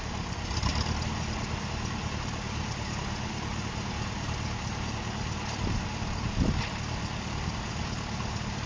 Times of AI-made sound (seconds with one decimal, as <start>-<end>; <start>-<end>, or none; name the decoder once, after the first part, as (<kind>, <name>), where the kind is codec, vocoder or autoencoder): 0.0-0.7 (vocoder, BigVGAN v2); 1.7-8.7